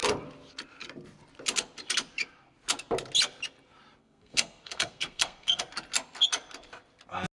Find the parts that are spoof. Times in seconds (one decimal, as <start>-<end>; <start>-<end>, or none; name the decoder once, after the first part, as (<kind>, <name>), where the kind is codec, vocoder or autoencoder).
4.0-5.6 (codec, SNAC)